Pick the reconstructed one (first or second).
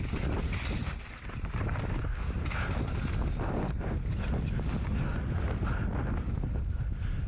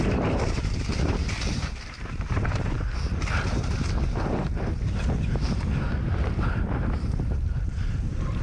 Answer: second